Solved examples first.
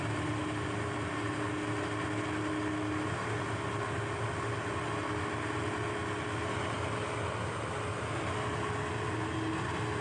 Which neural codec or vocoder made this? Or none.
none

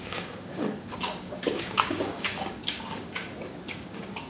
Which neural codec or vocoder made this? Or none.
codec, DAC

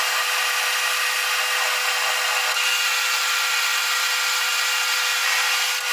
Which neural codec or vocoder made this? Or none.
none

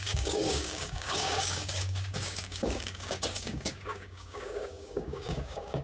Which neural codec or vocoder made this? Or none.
codec, DAC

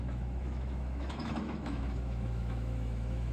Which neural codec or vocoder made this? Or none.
autoencoder, DAC-VAE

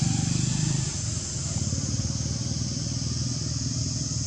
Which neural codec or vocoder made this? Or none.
none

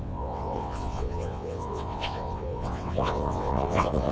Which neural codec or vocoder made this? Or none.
vocoder, WaveNeXt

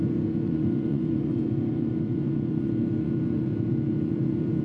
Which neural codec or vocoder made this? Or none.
vocoder, Vocos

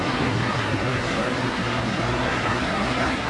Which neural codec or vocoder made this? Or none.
codec, SNAC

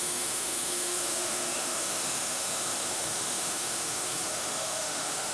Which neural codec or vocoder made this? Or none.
autoencoder, DAC-VAE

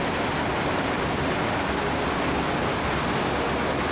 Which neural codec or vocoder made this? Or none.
none